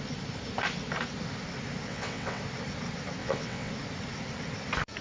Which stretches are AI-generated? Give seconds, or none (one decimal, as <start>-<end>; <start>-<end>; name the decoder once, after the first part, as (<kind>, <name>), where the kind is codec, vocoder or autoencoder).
1.9-2.4 (vocoder, WaveNeXt); 3.2-3.7